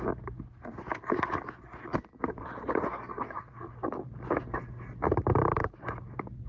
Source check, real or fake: real